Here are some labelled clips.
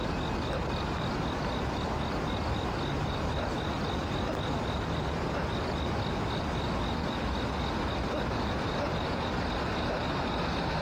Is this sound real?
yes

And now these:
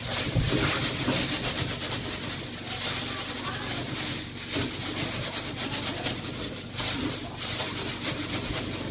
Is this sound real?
yes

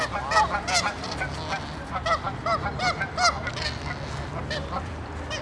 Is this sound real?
yes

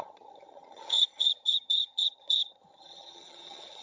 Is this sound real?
no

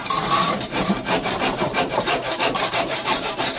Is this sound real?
no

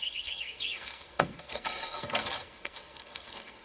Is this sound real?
no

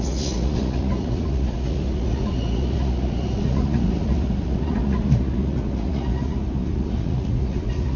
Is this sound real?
no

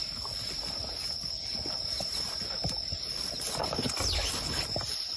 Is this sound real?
yes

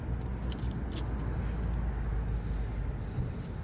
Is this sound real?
yes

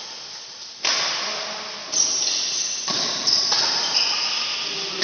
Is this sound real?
yes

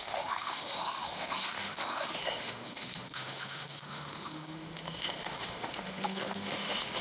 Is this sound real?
no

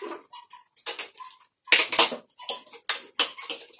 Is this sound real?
yes